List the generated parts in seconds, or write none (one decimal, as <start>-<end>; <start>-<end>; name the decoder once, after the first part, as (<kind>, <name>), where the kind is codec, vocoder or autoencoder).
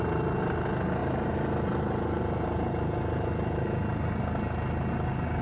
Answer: none